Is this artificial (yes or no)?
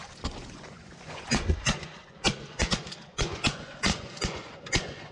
yes